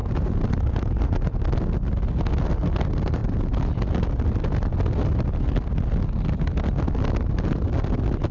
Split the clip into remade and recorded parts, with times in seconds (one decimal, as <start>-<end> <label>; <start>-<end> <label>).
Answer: 0.0-1.5 remade; 1.5-8.3 recorded